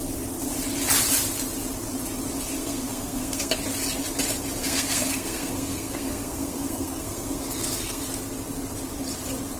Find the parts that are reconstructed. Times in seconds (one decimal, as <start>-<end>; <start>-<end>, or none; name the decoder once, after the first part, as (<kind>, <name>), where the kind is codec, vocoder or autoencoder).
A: 2.6-3.6 (codec, SNAC); 4.6-8.0